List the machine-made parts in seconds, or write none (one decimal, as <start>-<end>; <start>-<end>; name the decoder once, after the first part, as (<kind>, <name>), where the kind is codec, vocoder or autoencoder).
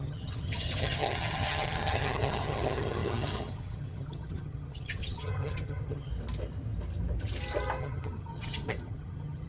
0.0-6.1 (vocoder, HiFi-GAN); 7.8-9.5